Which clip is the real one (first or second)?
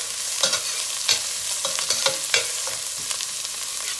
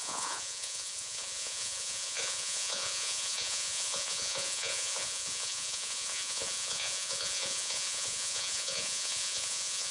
first